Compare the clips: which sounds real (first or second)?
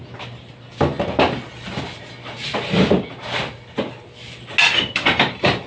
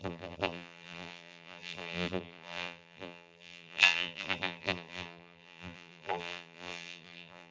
first